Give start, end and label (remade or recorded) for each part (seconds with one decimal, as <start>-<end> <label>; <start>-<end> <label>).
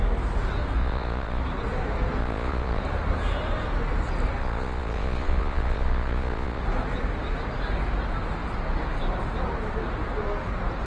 0.0-0.8 recorded; 0.8-1.4 remade; 1.4-2.2 recorded; 2.2-2.8 remade; 2.8-4.4 recorded; 4.4-6.6 remade; 6.6-10.9 recorded